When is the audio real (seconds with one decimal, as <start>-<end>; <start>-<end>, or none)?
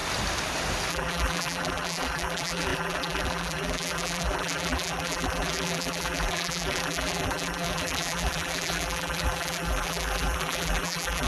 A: 0.0-0.9